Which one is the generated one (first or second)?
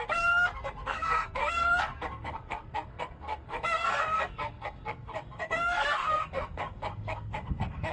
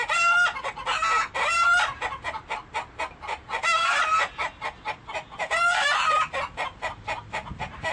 first